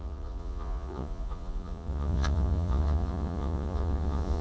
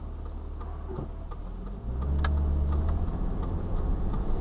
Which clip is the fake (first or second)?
first